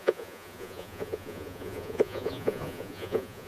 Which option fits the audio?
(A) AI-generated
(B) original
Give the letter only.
A